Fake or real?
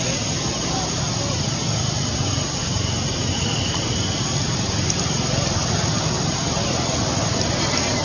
real